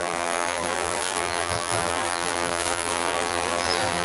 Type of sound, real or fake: fake